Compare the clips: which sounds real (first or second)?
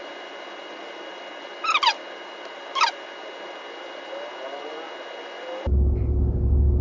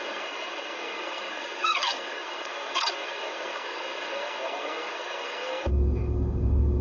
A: first